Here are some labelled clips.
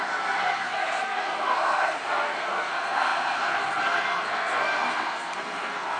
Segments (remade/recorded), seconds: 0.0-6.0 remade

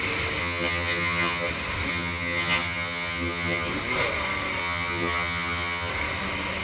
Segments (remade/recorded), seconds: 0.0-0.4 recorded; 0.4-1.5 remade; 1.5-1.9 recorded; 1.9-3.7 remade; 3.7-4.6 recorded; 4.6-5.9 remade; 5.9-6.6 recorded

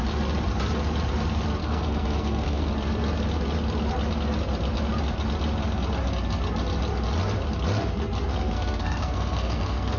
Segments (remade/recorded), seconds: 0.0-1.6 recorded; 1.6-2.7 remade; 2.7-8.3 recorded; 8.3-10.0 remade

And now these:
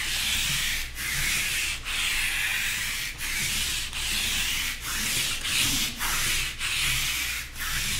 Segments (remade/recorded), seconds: 0.0-8.0 recorded

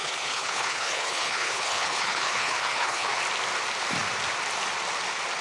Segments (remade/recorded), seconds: 0.0-3.2 remade; 3.2-5.4 recorded